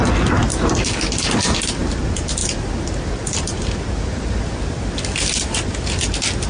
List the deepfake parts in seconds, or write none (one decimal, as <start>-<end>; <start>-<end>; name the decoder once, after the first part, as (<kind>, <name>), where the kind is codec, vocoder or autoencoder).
none